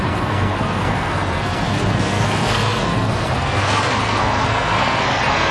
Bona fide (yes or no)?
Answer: no